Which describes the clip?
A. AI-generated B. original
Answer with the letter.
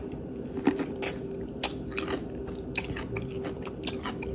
B